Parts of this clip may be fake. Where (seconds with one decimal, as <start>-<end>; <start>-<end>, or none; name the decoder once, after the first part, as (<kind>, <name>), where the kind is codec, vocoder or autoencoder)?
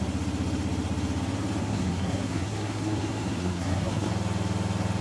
1.6-4.1 (codec, SNAC)